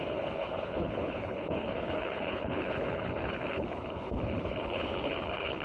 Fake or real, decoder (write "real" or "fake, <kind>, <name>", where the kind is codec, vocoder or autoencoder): fake, codec, HILCodec